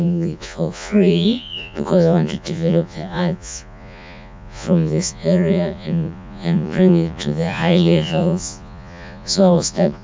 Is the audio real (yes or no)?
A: no